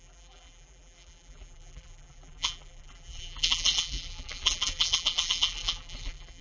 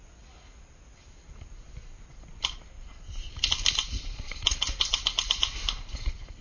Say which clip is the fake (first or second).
first